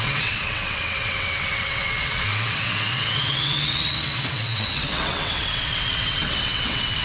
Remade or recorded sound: remade